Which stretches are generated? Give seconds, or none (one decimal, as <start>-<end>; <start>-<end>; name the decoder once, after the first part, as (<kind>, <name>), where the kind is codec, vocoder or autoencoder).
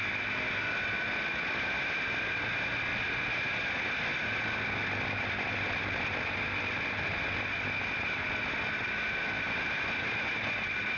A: none